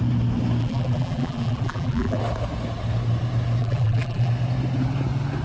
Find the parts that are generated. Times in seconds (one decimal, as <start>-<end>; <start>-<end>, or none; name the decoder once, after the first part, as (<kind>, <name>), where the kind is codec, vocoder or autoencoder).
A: 0.6-2.2 (vocoder, BigVGAN v2); 3.6-4.3